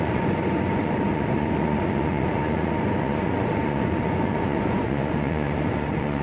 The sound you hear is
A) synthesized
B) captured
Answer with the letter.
A